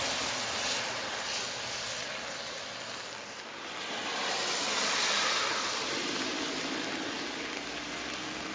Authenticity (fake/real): real